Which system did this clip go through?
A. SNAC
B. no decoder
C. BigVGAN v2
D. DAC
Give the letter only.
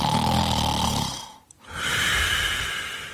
B